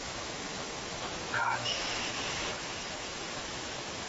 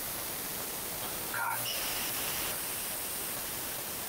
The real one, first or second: second